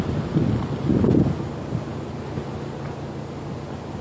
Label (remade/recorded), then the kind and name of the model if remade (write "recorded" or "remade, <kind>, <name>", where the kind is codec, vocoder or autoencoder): recorded